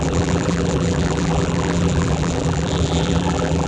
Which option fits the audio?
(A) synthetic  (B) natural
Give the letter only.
A